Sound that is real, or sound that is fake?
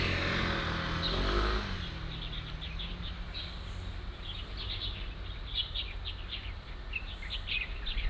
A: real